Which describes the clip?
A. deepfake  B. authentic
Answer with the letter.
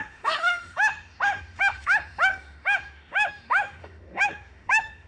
A